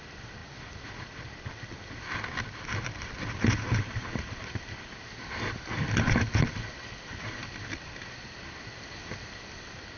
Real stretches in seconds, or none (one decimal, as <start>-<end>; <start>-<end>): 0.0-10.0